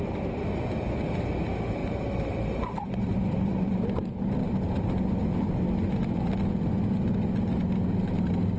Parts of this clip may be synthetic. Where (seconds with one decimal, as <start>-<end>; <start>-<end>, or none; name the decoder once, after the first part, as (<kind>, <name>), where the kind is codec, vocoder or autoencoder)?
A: 1.8-5.1 (vocoder, BigVGAN v2)